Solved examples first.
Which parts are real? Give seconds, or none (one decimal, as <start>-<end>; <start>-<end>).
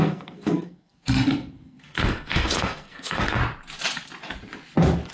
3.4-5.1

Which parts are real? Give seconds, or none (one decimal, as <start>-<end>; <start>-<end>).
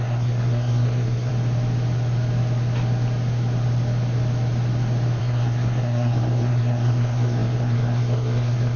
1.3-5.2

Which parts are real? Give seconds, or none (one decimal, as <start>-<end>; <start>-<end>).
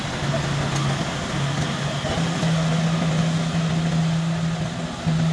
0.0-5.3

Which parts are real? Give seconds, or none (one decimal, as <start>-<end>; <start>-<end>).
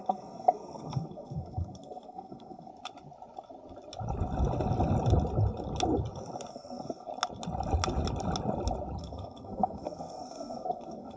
2.7-6.5; 7.1-9.0